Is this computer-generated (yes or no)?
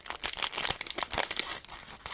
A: no